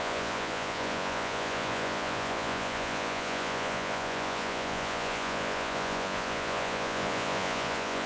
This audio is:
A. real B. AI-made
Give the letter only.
B